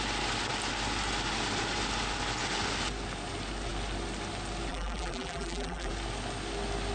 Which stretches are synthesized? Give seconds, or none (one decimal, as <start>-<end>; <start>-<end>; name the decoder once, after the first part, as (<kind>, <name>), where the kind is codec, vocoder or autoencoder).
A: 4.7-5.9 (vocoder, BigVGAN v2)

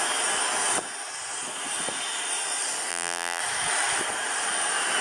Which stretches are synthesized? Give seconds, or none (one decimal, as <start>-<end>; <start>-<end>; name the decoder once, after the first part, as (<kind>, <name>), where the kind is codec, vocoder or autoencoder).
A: 2.9-3.4 (vocoder, BigVGAN v2)

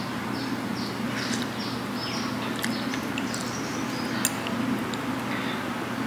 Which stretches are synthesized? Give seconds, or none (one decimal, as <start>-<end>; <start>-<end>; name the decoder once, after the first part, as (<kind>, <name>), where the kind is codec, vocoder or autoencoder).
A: none

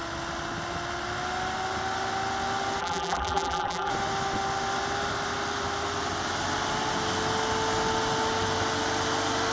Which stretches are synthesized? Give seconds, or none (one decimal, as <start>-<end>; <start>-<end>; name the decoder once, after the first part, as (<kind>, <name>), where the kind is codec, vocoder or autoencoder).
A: 2.8-3.9 (vocoder, BigVGAN v2)